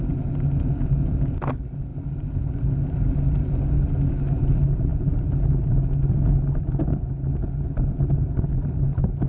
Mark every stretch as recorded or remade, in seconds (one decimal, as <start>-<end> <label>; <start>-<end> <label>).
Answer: 0.0-9.3 recorded